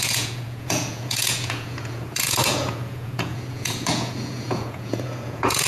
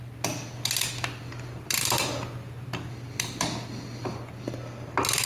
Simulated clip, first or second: first